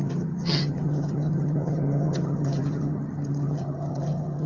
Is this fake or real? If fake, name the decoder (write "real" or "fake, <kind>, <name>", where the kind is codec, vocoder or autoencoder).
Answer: fake, vocoder, HiFi-GAN